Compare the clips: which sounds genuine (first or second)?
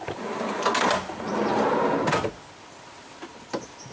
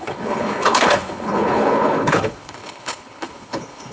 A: first